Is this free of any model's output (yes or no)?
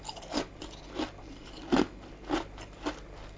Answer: yes